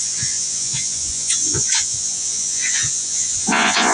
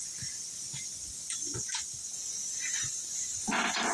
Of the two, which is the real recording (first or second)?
second